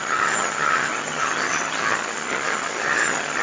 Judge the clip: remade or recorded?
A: remade